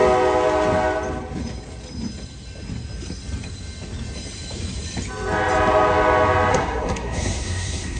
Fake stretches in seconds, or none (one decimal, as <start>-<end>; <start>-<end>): 6.5-8.0